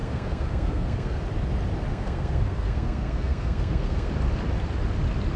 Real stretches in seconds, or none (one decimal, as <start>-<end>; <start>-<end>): 1.2-1.9; 4.1-5.4